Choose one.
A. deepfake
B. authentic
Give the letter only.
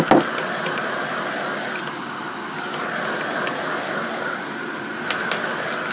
B